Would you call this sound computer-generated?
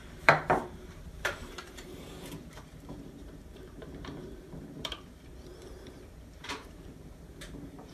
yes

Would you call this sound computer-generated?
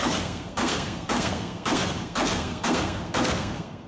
yes